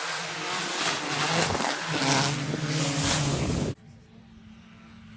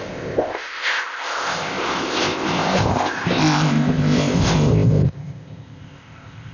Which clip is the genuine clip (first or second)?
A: first